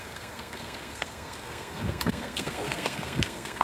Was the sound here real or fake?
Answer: fake